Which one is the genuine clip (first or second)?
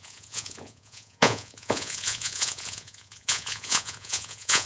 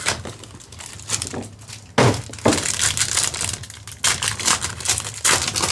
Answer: second